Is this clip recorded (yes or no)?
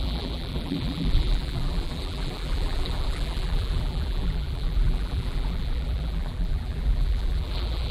no